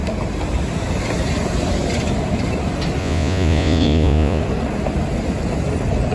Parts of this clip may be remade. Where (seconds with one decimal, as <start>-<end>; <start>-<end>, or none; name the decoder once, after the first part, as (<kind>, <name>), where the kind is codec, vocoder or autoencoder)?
3.0-4.4 (vocoder, Vocos)